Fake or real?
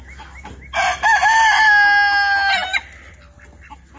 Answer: real